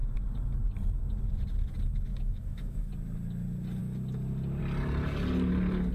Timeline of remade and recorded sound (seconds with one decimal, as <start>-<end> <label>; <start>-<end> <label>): 0.0-2.1 recorded; 2.1-2.9 remade; 2.9-5.9 recorded

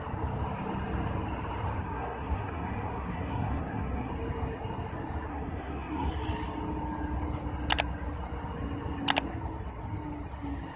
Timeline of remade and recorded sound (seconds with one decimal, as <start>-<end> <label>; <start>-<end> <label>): 0.0-1.8 recorded; 1.8-4.1 remade; 4.1-5.3 recorded; 5.3-6.1 remade; 6.1-10.8 recorded

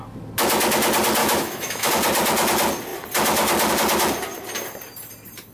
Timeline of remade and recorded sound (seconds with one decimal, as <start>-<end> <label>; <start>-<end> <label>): 0.0-1.2 recorded; 1.2-1.9 remade; 1.9-5.5 recorded

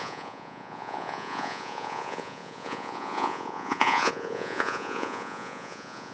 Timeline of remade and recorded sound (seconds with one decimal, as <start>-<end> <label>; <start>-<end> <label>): 0.0-6.1 remade

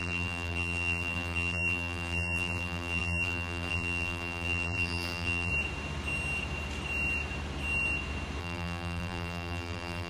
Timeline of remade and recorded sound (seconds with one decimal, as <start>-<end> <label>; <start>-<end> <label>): 0.0-5.5 remade; 5.5-8.4 recorded; 8.4-10.1 remade

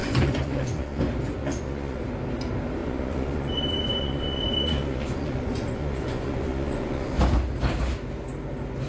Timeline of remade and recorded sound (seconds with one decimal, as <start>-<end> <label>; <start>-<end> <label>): 0.0-1.0 remade; 1.0-1.4 recorded; 1.4-2.0 remade; 2.0-2.8 recorded; 2.8-7.2 remade; 7.2-8.9 recorded

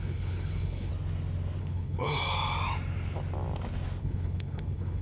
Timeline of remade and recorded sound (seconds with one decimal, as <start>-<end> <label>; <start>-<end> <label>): 0.0-0.9 remade; 0.9-1.6 recorded; 1.6-2.1 remade; 2.1-4.0 recorded; 4.0-5.0 remade

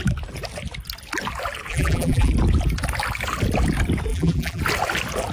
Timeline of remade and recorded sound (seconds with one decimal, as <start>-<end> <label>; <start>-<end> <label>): 0.0-1.7 recorded; 1.7-2.3 remade; 2.3-4.1 recorded; 4.1-4.6 remade; 4.6-5.3 recorded